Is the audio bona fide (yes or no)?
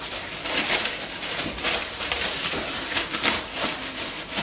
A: no